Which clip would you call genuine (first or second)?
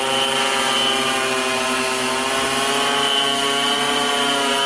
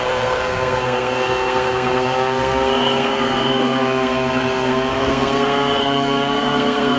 first